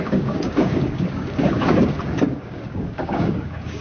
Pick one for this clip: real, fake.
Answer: fake